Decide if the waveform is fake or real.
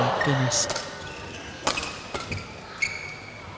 real